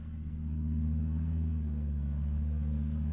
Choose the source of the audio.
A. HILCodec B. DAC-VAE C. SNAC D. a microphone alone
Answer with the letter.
C